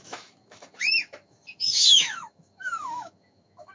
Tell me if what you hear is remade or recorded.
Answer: remade